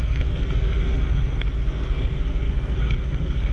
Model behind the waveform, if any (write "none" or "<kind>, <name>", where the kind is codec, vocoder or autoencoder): codec, SNAC